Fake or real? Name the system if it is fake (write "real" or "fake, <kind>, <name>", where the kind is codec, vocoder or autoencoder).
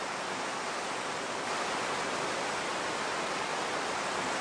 real